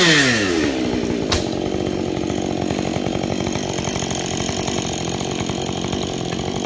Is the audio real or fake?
real